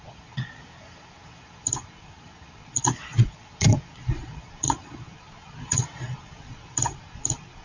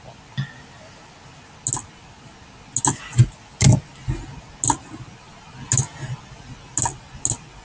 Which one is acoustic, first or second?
second